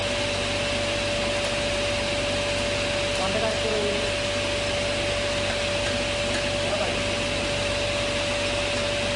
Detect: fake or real real